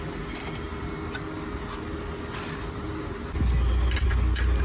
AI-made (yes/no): no